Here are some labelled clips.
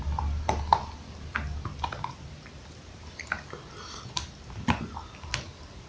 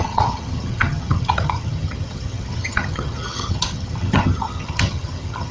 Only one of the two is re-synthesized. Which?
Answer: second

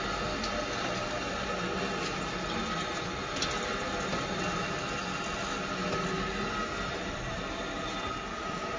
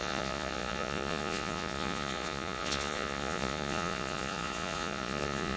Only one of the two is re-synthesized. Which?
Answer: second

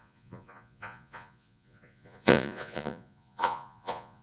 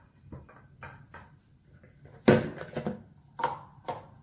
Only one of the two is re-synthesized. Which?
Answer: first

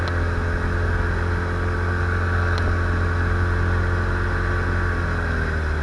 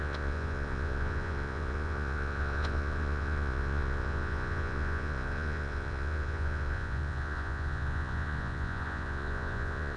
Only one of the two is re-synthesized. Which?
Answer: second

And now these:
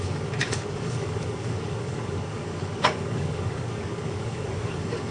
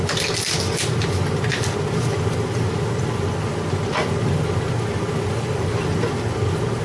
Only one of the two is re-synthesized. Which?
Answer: first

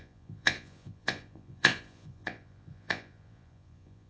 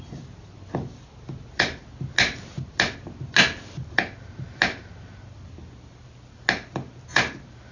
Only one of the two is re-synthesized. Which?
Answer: first